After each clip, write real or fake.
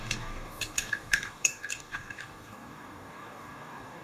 fake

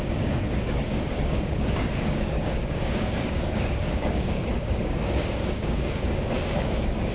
fake